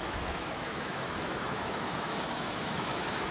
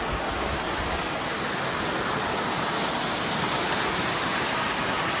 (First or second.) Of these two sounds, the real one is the second